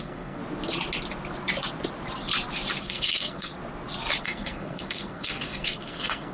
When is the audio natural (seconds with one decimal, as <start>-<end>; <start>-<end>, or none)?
0.4-2.8; 3.5-4.2